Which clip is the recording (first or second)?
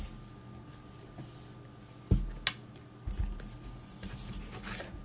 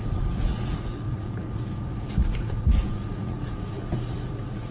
first